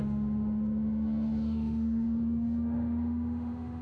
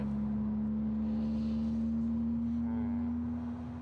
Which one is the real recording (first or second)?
second